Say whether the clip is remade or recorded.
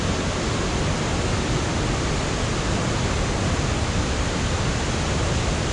recorded